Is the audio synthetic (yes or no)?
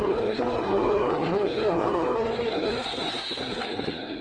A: yes